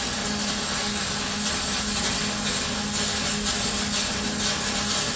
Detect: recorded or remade recorded